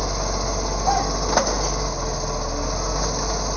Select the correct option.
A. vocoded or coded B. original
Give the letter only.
B